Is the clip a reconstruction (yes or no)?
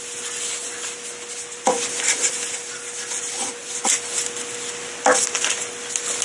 no